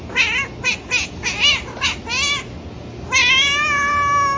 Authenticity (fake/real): real